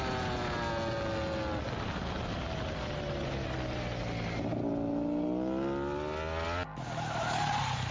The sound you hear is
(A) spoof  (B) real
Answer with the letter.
B